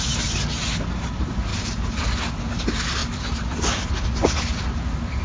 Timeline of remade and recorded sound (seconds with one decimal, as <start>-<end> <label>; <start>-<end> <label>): 0.0-1.5 recorded; 1.5-2.3 remade; 2.3-3.0 recorded; 3.0-3.9 remade; 3.9-5.2 recorded